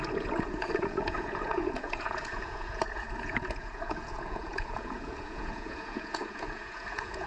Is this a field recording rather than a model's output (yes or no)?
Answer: no